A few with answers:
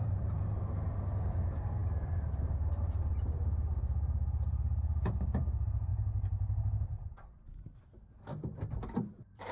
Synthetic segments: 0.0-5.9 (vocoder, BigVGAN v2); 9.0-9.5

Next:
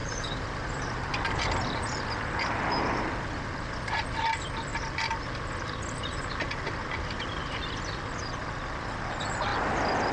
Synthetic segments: 0.0-1.5 (vocoder, BigVGAN v2)

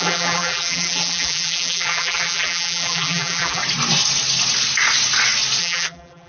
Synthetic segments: 0.0-3.6 (vocoder, BigVGAN v2); 5.6-6.3

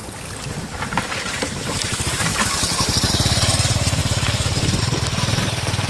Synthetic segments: 1.0-2.3 (vocoder, BigVGAN v2); 3.1-5.9